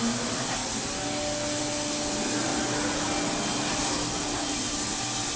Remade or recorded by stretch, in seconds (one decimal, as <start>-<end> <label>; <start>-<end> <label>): 0.0-5.4 recorded